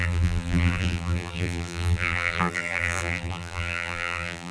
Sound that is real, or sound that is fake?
fake